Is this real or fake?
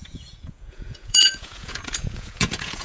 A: fake